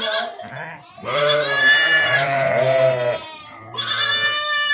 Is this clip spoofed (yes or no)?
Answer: yes